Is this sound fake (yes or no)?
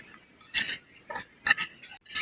no